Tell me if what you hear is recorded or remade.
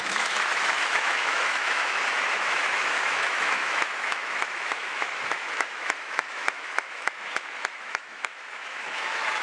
remade